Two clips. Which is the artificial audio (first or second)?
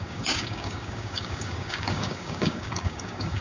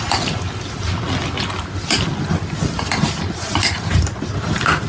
first